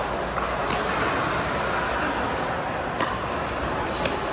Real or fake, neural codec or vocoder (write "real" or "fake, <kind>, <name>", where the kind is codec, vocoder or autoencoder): real